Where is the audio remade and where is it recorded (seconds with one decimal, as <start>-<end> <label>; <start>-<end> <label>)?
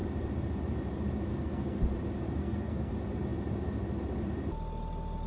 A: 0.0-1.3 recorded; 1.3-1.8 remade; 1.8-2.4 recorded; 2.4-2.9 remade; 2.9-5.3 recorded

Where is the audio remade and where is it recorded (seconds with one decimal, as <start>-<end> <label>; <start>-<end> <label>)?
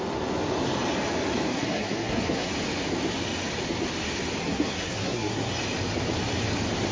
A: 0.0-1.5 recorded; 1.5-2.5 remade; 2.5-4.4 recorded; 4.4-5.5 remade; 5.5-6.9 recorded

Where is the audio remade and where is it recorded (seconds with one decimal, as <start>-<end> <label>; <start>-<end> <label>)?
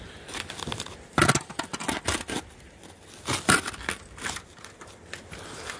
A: 0.0-5.8 recorded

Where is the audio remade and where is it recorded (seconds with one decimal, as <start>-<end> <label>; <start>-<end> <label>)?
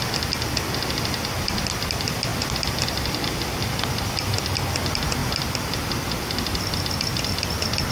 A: 0.0-7.9 recorded